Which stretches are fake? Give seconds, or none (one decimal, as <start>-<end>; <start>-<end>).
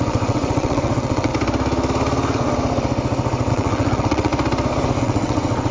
0.0-1.3; 3.5-4.3; 5.0-5.7